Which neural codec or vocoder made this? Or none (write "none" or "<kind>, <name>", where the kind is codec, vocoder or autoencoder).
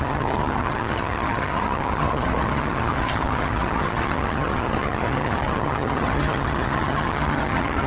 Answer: vocoder, HiFi-GAN